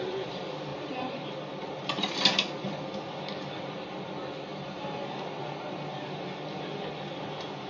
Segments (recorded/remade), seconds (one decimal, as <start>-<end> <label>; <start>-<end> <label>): 0.0-0.7 recorded; 0.7-1.3 remade; 1.3-4.5 recorded; 4.5-5.0 remade; 5.0-7.7 recorded